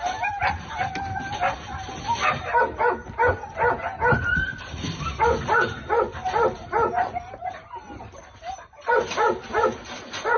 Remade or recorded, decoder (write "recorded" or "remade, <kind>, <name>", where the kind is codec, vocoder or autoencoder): recorded